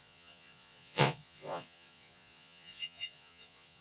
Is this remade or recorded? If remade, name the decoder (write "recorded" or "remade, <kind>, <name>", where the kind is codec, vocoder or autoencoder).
remade, vocoder, Vocos